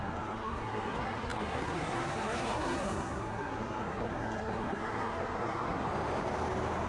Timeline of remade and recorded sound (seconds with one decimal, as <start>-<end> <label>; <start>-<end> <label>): 0.0-5.9 remade; 5.9-6.9 recorded